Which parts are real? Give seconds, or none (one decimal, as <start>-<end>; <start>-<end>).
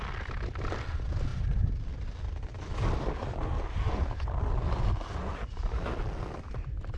0.0-1.3; 4.6-7.0